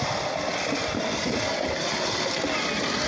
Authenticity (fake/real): real